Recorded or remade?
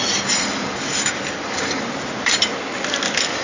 recorded